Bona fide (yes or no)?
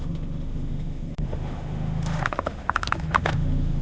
no